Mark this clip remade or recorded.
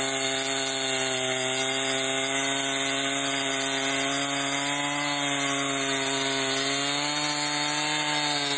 recorded